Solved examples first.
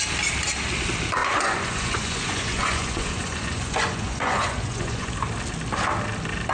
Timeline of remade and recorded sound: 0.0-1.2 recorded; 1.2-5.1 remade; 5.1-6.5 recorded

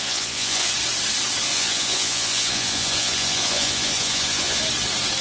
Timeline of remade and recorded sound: 0.0-0.7 remade; 0.7-1.5 recorded; 1.5-4.6 remade; 4.6-5.2 recorded

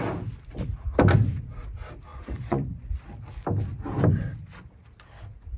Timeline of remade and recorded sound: 0.0-2.1 recorded; 2.1-3.0 remade; 3.0-5.6 recorded

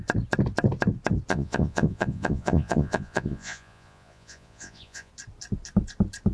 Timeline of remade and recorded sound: 0.0-1.3 recorded; 1.3-5.1 remade; 5.1-6.3 recorded

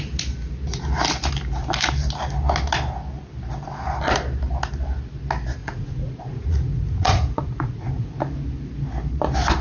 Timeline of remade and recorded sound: 0.0-5.6 recorded; 5.6-8.2 remade; 8.2-9.6 recorded

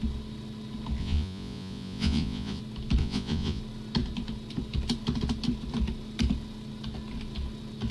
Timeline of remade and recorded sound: 0.0-1.0 recorded; 1.0-2.6 remade; 2.6-3.0 recorded; 3.0-3.6 remade; 3.6-7.9 recorded